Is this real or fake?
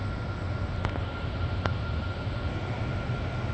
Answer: real